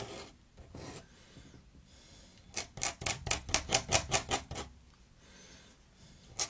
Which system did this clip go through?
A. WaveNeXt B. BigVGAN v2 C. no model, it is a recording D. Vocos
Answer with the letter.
C